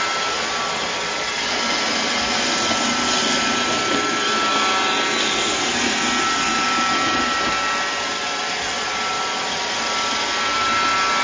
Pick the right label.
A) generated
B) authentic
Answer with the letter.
B